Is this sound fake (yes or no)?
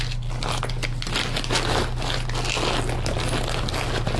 no